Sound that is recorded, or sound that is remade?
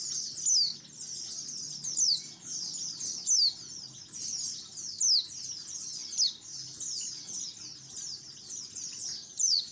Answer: recorded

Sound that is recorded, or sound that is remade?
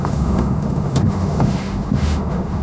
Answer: remade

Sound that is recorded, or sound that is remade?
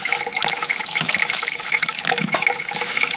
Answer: remade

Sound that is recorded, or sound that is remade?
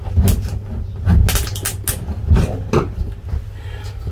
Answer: recorded